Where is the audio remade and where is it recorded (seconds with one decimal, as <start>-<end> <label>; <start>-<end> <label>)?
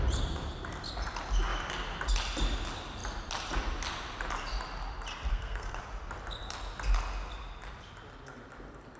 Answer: 0.0-5.3 recorded; 5.3-5.8 remade; 5.8-9.0 recorded